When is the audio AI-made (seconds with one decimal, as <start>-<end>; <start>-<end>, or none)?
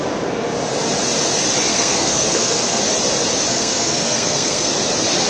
1.7-2.8; 3.5-4.7